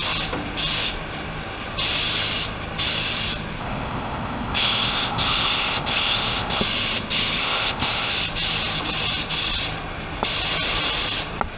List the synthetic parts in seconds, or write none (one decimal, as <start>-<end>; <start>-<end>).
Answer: 3.6-6.6; 7.4-8.1